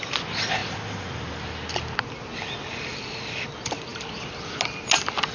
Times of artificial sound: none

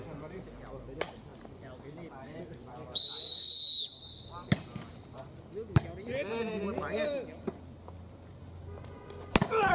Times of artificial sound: none

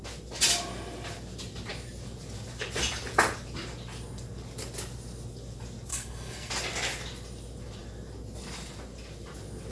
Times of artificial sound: 5.9-6.5